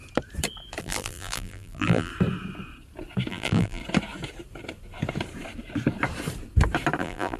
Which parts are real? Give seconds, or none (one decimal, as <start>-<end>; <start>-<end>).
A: 0.0-0.8; 2.1-3.3; 3.8-7.0